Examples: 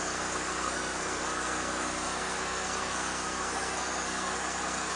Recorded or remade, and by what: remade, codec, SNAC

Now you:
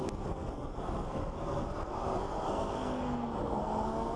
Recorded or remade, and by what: remade, codec, SNAC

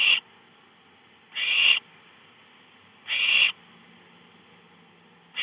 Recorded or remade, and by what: recorded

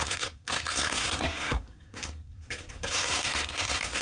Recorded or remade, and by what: remade, codec, SNAC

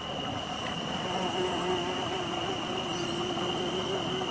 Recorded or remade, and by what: remade, vocoder, BigVGAN v2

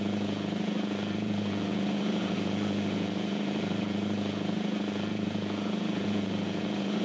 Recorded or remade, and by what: remade, vocoder, Vocos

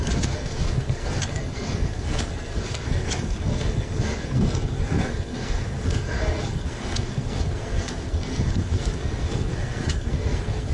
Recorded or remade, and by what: remade, codec, SNAC